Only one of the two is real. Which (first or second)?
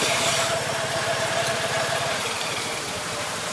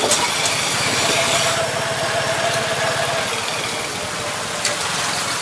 second